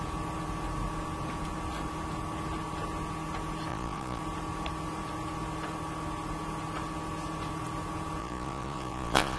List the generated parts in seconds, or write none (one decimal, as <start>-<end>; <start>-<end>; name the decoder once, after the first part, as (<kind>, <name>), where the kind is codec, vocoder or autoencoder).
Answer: 3.7-4.2 (vocoder, Vocos); 8.2-9.4